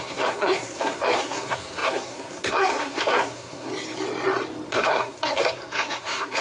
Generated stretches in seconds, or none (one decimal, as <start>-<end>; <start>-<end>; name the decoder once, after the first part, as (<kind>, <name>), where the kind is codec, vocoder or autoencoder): 0.0-3.7 (codec, SNAC); 4.7-6.4